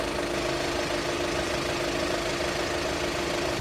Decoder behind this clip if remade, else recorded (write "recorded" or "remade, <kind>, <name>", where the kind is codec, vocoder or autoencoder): recorded